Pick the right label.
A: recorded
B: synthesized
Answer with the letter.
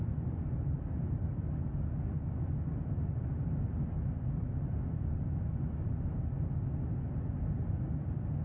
A